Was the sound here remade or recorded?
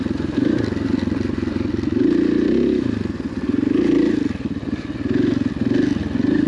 recorded